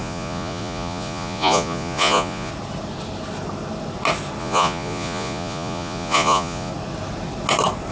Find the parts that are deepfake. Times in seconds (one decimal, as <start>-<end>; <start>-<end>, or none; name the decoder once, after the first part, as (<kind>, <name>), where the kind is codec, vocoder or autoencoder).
0.0-2.5 (vocoder, Vocos); 4.4-6.7